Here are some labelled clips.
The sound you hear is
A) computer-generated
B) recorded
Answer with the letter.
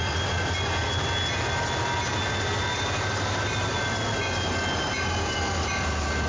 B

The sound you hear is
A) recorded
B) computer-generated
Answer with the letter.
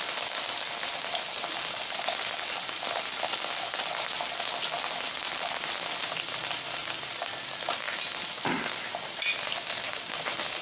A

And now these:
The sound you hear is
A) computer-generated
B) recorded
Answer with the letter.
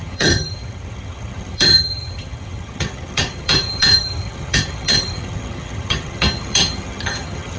A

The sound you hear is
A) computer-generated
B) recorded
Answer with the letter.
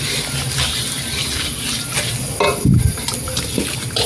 B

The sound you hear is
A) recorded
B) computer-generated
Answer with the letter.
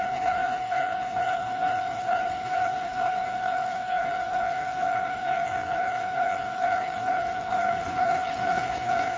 B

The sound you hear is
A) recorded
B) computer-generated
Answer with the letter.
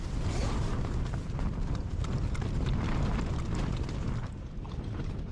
A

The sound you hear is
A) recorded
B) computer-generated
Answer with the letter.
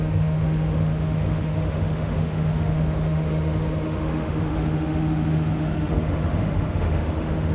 B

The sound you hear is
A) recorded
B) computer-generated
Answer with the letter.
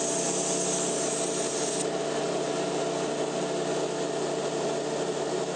A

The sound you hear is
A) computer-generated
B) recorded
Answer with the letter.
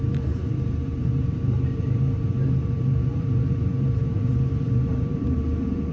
A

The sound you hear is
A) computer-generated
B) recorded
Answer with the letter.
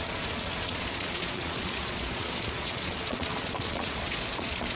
A